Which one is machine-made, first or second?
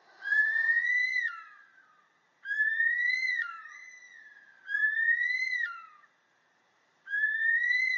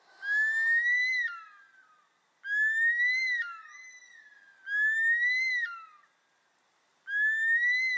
first